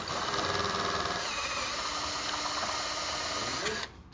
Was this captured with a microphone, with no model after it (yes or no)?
yes